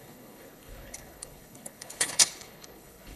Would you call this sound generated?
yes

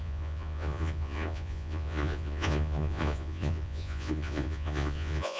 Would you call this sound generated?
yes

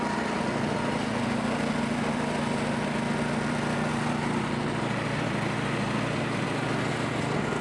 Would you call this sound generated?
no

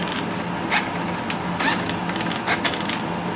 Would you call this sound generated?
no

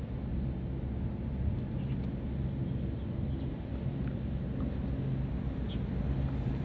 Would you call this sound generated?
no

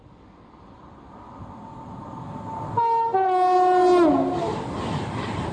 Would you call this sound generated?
no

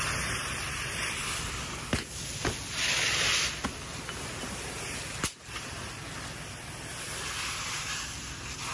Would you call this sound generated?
no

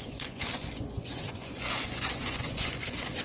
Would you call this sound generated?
yes